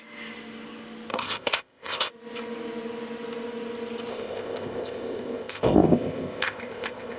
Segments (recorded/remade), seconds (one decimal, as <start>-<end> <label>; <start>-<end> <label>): 0.0-1.1 recorded; 1.1-2.1 remade; 2.1-4.1 recorded; 4.1-7.2 remade